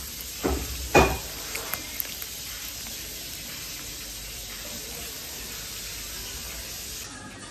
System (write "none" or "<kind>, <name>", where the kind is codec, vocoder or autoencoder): none